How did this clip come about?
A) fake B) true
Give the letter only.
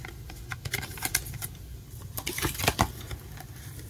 B